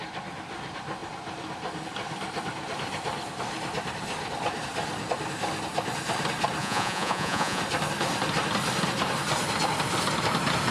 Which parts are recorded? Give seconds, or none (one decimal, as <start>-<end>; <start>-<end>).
0.0-6.6; 7.6-10.7